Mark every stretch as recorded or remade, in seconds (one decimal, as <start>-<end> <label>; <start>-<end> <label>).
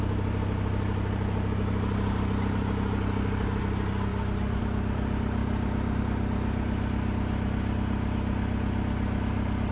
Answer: 0.0-9.7 recorded